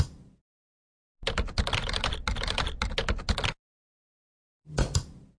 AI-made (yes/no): no